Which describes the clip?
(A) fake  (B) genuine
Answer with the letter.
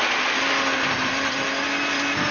B